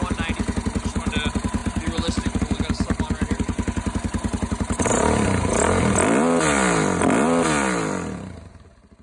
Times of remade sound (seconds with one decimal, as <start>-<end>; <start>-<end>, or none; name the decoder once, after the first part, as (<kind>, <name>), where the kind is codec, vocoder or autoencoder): none